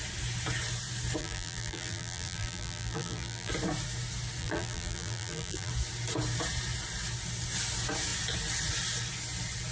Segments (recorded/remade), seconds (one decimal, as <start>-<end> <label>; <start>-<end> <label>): 0.0-1.2 recorded; 1.2-3.5 remade; 3.5-4.4 recorded; 4.4-5.7 remade; 5.7-9.7 recorded